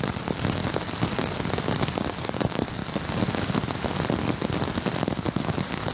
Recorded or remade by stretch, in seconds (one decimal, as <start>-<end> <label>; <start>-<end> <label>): 0.0-0.6 remade; 0.6-2.2 recorded; 2.2-2.8 remade; 2.8-5.4 recorded; 5.4-5.9 remade